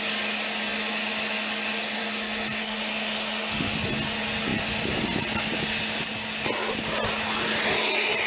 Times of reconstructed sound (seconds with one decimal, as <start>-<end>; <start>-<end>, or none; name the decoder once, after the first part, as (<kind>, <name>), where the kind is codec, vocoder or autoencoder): 2.6-3.7 (autoencoder, DAC-VAE)